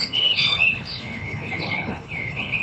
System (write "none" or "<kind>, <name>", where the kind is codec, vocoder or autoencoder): codec, HILCodec